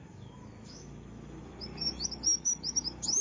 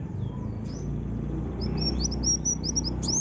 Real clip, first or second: second